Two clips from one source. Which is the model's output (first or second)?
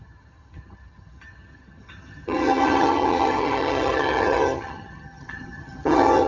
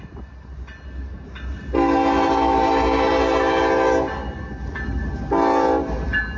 first